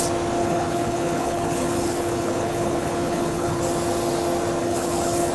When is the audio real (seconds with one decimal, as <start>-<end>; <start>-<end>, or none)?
0.0-0.4; 3.6-4.6